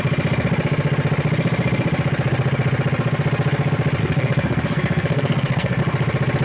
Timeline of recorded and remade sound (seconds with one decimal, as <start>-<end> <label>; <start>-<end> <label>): 0.0-4.0 recorded; 4.0-5.8 remade; 5.8-6.4 recorded